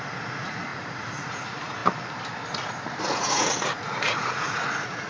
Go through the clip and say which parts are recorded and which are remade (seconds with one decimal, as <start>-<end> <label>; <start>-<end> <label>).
0.0-1.8 remade; 1.8-3.0 recorded; 3.0-5.1 remade